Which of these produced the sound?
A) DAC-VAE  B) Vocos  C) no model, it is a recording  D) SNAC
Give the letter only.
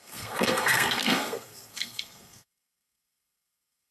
D